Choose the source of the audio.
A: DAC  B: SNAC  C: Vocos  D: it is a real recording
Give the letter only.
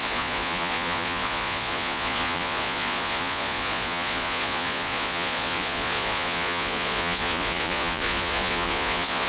C